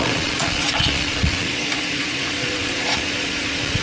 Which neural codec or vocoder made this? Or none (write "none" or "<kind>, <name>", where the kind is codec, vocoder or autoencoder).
vocoder, Vocos